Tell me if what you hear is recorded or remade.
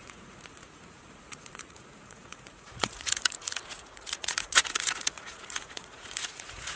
remade